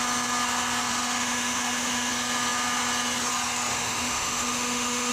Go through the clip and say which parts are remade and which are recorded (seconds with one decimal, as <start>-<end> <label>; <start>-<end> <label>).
0.0-0.9 recorded; 0.9-2.1 remade; 2.1-3.7 recorded; 3.7-5.1 remade